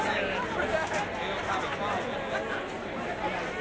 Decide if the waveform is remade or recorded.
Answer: recorded